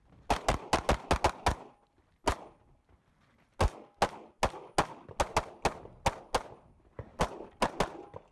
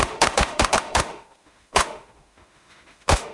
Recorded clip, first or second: first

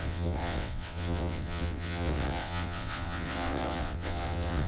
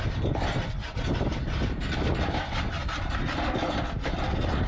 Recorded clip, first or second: second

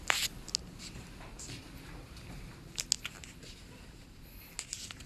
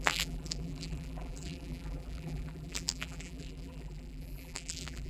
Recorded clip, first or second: first